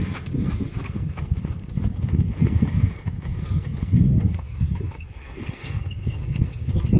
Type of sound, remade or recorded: remade